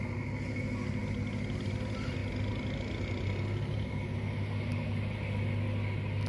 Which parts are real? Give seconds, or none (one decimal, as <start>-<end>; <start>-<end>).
0.0-6.3